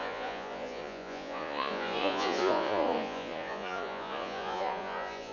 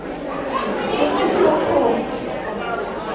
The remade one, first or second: first